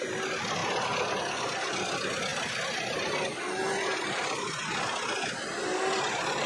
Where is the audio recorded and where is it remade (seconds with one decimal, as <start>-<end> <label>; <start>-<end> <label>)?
0.0-6.5 recorded